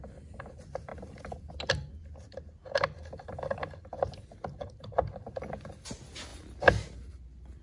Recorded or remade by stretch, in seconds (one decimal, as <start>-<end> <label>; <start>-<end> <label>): 0.0-7.6 recorded